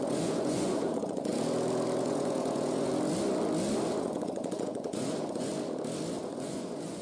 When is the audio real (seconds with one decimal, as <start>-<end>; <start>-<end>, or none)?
1.3-2.0; 2.9-4.0; 5.5-6.2